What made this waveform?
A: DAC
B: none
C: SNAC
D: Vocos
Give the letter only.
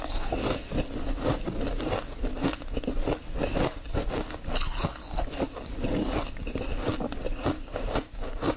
B